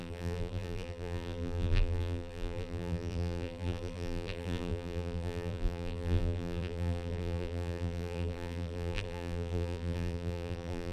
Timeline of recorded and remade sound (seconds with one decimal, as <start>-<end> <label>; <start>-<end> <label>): 0.0-10.9 remade